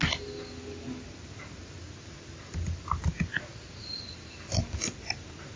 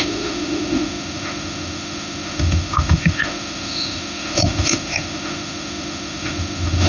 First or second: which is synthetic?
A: second